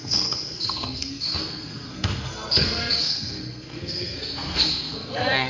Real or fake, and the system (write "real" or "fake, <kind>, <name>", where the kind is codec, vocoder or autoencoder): fake, codec, SNAC